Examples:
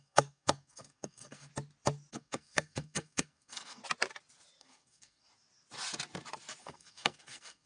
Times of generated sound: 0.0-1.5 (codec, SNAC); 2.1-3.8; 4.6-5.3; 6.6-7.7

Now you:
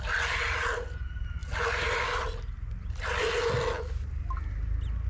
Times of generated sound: none

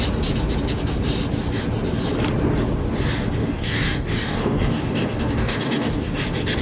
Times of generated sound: 3.4-6.1 (codec, DAC)